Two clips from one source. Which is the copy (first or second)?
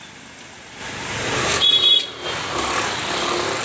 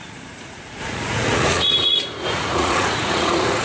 second